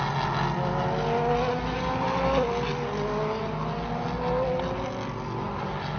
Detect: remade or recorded recorded